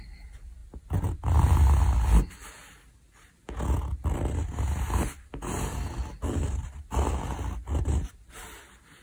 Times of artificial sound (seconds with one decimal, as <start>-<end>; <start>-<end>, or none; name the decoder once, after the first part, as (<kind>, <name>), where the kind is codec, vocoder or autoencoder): none